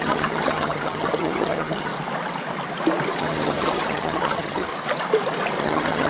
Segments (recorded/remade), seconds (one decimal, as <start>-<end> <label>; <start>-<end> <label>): 0.0-1.9 remade; 1.9-3.2 recorded; 3.2-4.7 remade; 4.7-5.6 recorded; 5.6-6.1 remade